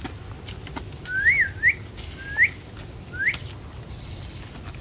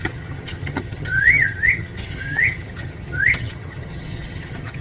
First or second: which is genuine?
first